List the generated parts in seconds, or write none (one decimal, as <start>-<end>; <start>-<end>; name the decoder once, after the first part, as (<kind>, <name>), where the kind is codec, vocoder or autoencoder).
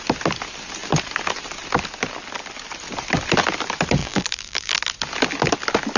4.0-4.7 (vocoder, BigVGAN v2)